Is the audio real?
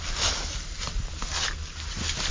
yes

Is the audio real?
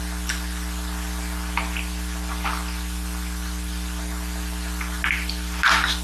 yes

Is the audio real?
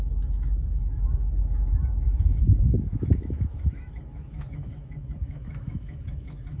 no